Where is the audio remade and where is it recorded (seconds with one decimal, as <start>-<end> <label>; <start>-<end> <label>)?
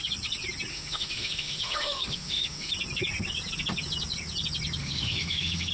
0.0-0.7 recorded; 0.7-2.7 remade; 2.7-4.8 recorded; 4.8-5.7 remade